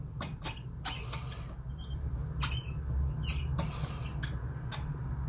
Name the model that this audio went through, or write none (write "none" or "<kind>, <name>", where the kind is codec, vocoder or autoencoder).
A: none